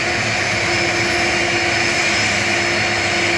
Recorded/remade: recorded